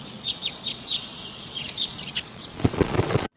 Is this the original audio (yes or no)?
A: no